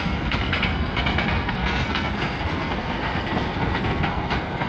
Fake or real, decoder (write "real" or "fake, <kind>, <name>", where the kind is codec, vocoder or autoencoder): fake, codec, SNAC